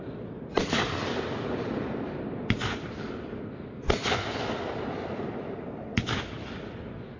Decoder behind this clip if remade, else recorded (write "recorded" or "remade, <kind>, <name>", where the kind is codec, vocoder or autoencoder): recorded